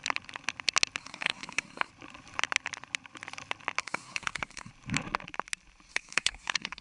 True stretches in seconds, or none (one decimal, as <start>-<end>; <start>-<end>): 0.0-1.0; 1.9-3.8; 4.7-5.9